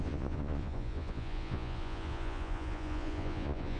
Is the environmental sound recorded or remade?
remade